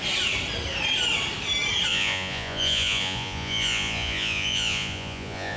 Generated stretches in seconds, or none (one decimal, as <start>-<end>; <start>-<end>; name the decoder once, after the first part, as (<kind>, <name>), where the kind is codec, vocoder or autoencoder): 1.9-5.6 (vocoder, Vocos)